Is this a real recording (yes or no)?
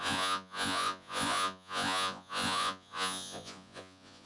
no